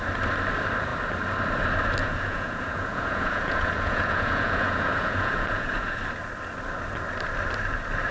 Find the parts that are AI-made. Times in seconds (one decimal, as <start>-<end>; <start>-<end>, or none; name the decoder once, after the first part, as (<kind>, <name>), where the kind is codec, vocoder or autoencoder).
2.0-6.0 (vocoder, Vocos)